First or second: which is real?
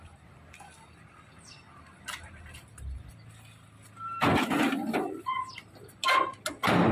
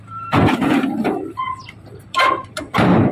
first